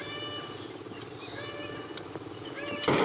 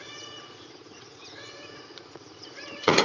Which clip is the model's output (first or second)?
second